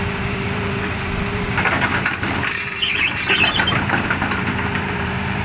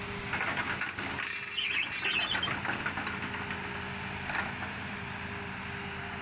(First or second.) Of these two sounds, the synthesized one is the first